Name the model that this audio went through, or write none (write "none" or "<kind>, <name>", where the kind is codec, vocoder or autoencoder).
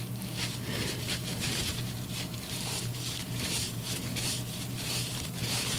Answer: vocoder, BigVGAN v2